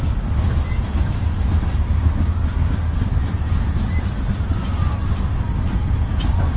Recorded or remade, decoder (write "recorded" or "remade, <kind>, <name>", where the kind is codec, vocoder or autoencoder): recorded